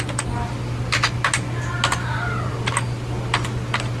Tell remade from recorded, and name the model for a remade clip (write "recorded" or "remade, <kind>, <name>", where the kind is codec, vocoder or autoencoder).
recorded